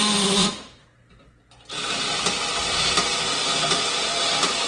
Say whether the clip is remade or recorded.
recorded